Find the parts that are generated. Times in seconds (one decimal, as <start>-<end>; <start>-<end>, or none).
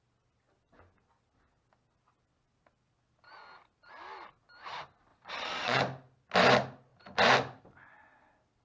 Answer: 5.1-5.8